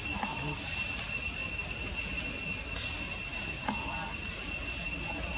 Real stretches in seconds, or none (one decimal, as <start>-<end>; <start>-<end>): 0.0-5.4